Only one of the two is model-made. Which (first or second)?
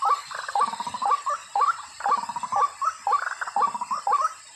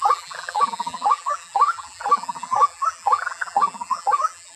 second